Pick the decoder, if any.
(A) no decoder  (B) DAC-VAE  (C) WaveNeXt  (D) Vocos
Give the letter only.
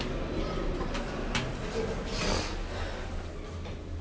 A